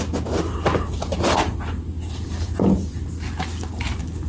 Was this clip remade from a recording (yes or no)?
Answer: no